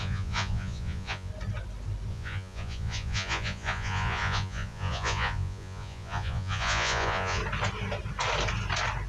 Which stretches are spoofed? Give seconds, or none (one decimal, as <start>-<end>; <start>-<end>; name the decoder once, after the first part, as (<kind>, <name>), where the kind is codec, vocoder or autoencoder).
0.0-1.3 (vocoder, Vocos); 2.1-7.4